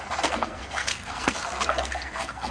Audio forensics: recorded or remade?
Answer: remade